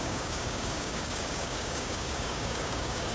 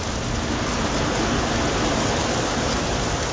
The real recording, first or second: second